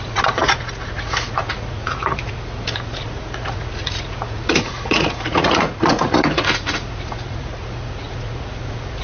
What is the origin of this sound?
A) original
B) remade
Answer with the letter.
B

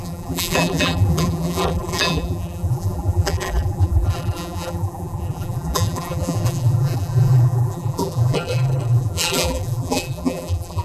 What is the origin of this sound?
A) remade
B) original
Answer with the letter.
A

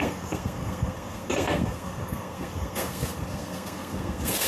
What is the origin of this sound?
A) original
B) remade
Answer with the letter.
B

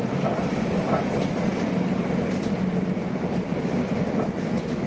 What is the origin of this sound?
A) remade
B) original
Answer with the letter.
A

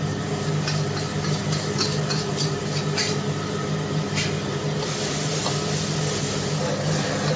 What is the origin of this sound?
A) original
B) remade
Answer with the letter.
A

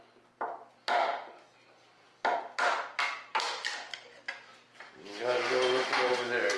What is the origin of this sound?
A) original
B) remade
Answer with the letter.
A